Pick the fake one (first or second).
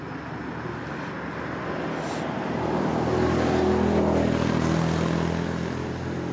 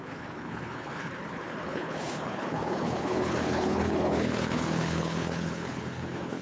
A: second